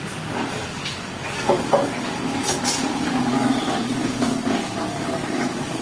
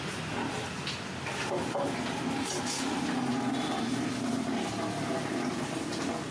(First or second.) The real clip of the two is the second